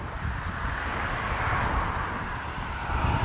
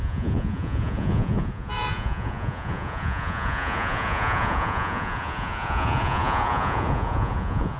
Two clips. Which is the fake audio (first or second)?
second